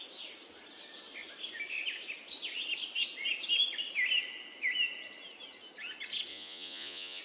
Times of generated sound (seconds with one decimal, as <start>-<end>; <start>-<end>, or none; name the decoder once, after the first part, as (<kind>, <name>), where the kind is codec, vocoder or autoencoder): 6.3-7.2 (vocoder, Vocos)